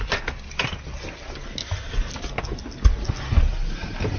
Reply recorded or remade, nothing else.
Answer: recorded